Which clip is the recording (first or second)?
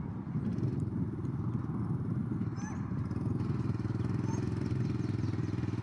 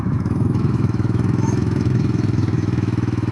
first